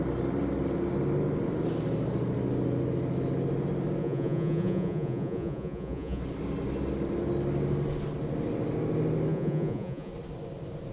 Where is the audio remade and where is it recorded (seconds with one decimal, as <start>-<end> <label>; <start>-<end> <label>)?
0.0-4.0 recorded; 4.0-6.2 remade; 6.2-9.3 recorded; 9.3-10.1 remade; 10.1-10.9 recorded

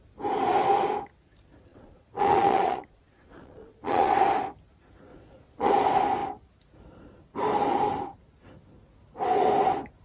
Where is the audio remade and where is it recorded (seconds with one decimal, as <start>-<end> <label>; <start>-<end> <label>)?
0.0-1.7 recorded; 1.7-4.1 remade; 4.1-5.1 recorded; 5.1-5.7 remade; 5.7-10.0 recorded

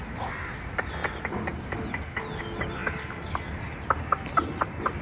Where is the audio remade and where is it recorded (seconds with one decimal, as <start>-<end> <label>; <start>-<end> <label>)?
0.0-5.0 recorded

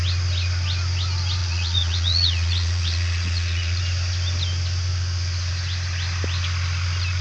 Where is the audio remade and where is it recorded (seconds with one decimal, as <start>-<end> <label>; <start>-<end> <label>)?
0.0-1.4 recorded; 1.4-3.8 remade; 3.8-7.2 recorded

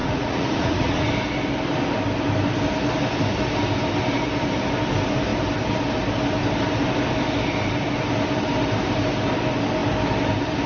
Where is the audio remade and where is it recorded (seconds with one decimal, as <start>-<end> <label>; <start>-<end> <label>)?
0.0-1.1 remade; 1.1-10.7 recorded

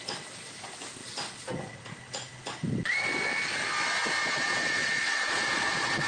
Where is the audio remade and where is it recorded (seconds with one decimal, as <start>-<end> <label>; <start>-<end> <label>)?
0.0-4.2 recorded; 4.2-6.1 remade

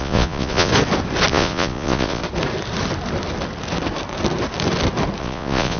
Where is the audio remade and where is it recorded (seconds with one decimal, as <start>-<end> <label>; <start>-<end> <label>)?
0.0-0.7 remade; 0.7-1.3 recorded; 1.3-2.2 remade; 2.2-5.2 recorded; 5.2-5.8 remade